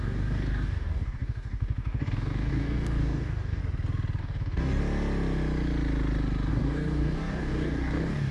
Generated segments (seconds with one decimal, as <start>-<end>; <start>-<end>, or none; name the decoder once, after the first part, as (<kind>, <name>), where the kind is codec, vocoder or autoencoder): 0.0-3.6 (codec, DAC); 4.2-4.8; 6.5-8.3